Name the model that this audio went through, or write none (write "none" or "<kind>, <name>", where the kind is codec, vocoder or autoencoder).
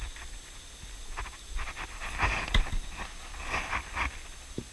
none